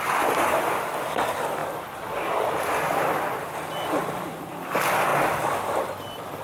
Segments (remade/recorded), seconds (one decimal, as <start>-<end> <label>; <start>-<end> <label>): 0.0-6.4 recorded